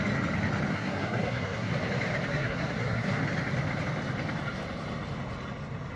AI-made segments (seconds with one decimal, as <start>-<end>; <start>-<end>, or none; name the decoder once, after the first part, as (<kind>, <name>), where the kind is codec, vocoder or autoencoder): 0.7-1.7 (codec, SNAC); 2.3-3.2